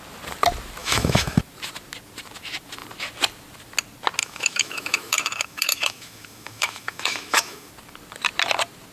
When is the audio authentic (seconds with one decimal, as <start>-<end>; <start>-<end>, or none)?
0.0-0.8; 1.4-4.2; 7.7-8.9